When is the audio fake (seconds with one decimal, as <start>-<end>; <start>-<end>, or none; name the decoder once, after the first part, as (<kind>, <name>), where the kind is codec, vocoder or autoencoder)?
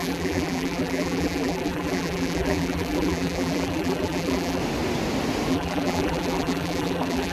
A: 0.0-4.6 (vocoder, BigVGAN v2); 5.5-7.3